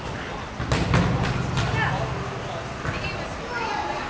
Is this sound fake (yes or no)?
no